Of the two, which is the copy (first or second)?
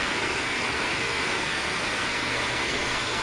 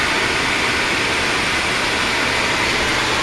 first